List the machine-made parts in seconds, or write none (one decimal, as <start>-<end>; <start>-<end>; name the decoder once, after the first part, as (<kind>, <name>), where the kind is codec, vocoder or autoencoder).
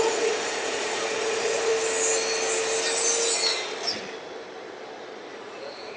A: 0.0-1.7 (vocoder, Vocos); 5.3-6.0